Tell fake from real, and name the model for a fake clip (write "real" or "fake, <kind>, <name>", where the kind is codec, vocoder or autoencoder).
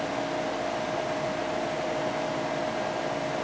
real